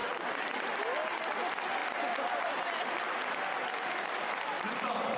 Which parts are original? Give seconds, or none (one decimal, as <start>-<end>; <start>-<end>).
0.0-5.2